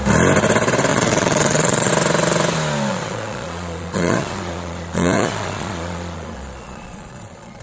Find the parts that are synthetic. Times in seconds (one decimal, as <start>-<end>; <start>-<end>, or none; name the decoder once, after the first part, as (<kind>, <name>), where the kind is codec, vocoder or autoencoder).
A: 0.9-1.9 (vocoder, Vocos); 2.9-7.6